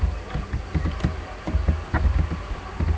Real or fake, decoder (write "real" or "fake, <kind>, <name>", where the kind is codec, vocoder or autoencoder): real